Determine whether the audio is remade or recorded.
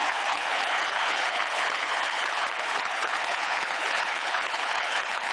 remade